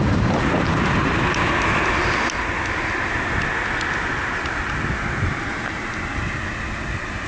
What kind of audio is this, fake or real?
real